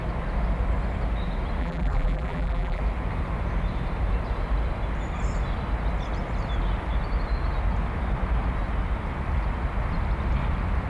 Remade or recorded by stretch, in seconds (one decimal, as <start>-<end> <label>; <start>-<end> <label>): 0.0-1.6 recorded; 1.6-2.8 remade; 2.8-10.9 recorded